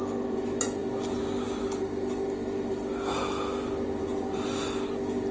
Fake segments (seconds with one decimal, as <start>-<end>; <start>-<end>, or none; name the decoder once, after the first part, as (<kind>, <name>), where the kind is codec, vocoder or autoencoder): none